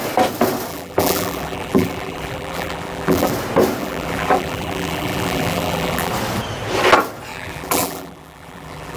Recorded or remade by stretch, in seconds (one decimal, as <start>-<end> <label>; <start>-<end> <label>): 0.0-0.7 recorded; 0.7-3.3 remade; 3.3-3.8 recorded; 3.8-6.1 remade; 6.1-7.3 recorded; 7.3-9.0 remade